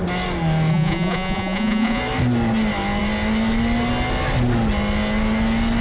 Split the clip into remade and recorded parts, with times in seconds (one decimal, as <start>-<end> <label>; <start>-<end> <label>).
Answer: 0.0-0.7 recorded; 0.7-2.0 remade; 2.0-5.8 recorded